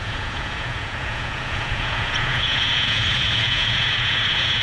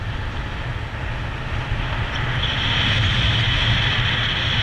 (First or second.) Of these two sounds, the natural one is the second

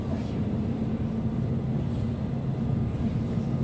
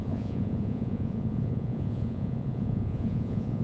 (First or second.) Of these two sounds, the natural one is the first